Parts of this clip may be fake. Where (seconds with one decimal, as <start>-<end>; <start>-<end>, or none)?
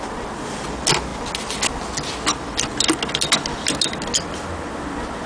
none